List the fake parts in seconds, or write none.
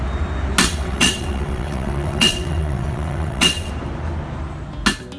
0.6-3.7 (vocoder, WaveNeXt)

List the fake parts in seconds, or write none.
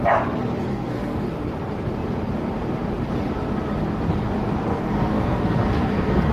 0.7-1.3 (codec, SNAC); 4.7-6.3